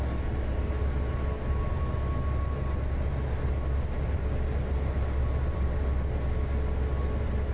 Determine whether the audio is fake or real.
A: real